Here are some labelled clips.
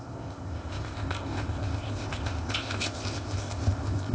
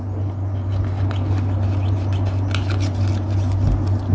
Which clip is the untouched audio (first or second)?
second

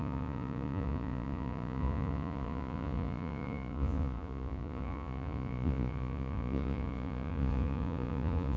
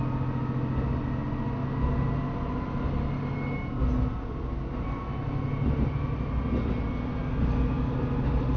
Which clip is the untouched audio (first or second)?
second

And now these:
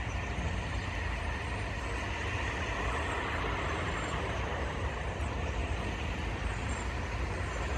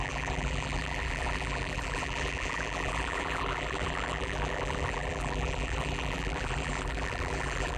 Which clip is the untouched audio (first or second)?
first